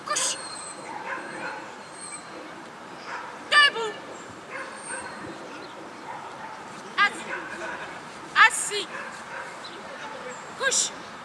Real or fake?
fake